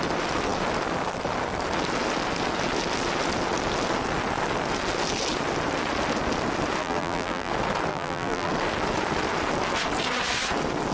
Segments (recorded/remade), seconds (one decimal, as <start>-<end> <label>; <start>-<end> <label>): 0.0-6.8 recorded; 6.8-7.5 remade; 7.5-7.9 recorded; 7.9-8.5 remade; 8.5-10.9 recorded